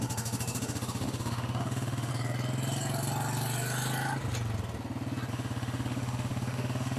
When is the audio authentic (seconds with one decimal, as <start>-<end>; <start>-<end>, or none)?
2.1-5.3